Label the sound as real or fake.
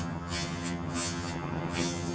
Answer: fake